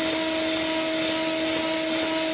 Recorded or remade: recorded